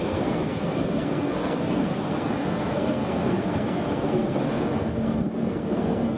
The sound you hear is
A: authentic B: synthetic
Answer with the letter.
B